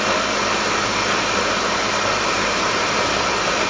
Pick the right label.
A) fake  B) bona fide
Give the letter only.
B